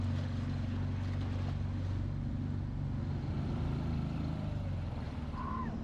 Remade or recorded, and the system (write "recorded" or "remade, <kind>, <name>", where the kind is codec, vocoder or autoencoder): recorded